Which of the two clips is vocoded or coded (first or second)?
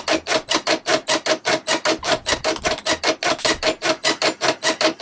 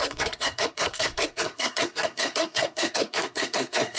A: second